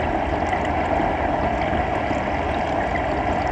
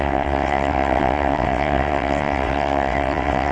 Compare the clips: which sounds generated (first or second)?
second